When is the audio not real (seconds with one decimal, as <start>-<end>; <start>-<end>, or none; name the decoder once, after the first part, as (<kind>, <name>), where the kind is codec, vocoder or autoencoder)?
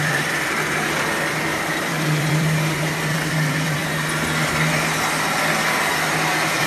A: 0.0-3.8 (vocoder, BigVGAN v2); 6.3-6.7